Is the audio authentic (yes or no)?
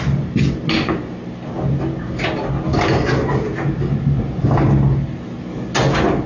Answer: yes